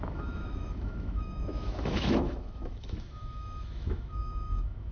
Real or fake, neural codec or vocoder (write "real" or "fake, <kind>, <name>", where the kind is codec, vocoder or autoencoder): fake, autoencoder, DAC-VAE